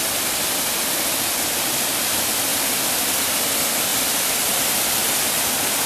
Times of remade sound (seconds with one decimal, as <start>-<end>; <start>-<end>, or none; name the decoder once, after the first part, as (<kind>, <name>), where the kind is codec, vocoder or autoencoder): 2.5-3.1 (vocoder, BigVGAN v2)